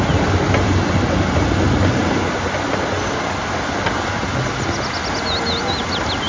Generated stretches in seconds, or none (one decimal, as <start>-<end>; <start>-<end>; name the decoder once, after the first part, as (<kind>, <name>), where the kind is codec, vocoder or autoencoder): none